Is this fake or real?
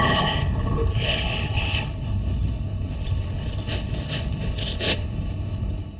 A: fake